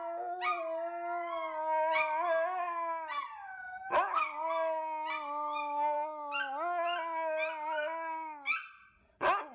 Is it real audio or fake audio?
real